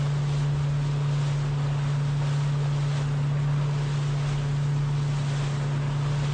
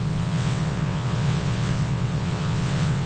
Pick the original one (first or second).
first